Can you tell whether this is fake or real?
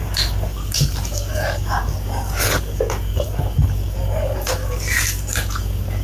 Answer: fake